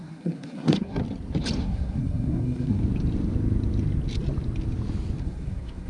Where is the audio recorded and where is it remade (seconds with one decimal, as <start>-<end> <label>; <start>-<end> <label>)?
0.0-1.0 remade; 1.0-1.6 recorded; 1.6-2.8 remade; 2.8-5.2 recorded; 5.2-5.9 remade